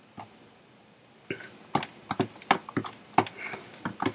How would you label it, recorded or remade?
recorded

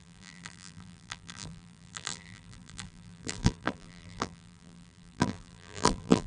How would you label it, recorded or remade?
remade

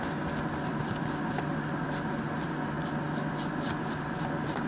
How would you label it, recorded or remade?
recorded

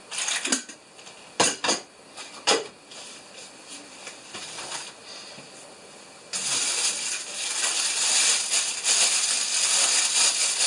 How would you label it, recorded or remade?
recorded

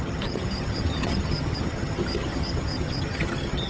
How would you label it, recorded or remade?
remade